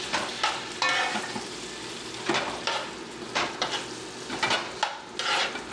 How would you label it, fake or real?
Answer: real